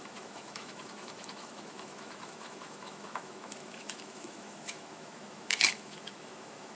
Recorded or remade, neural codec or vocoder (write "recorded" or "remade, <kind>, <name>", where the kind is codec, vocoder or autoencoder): remade, autoencoder, DAC-VAE